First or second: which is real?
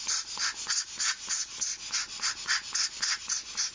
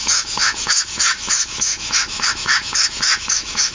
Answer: first